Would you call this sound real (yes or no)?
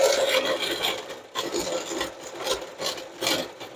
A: yes